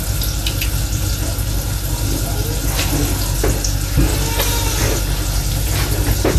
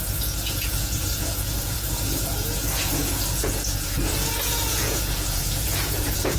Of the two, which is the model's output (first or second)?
second